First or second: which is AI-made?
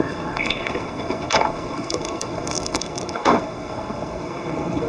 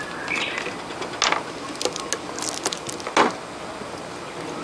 first